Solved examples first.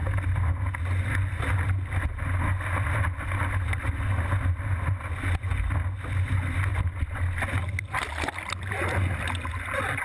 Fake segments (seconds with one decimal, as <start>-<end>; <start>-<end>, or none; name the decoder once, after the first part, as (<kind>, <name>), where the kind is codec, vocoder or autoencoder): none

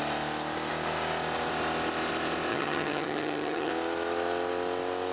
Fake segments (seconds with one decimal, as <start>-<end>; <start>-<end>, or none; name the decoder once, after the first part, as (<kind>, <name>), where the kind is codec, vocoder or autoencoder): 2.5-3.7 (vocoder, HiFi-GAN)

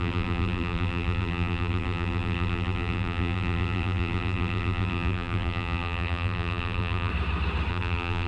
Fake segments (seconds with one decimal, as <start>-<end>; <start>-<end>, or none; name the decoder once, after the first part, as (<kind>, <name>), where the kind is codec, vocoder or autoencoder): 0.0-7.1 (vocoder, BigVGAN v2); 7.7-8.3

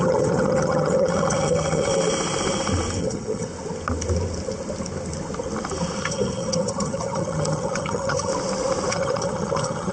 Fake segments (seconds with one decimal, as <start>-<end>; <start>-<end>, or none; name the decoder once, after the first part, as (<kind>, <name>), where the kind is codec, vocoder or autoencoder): 0.0-1.9 (vocoder, HiFi-GAN); 3.0-3.5; 6.0-8.3; 8.9-9.9